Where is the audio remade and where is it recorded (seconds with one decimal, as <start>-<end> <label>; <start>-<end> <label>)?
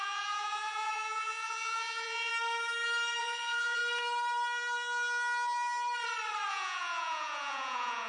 0.0-2.3 remade; 2.3-3.2 recorded; 3.2-3.8 remade; 3.8-6.5 recorded; 6.5-8.1 remade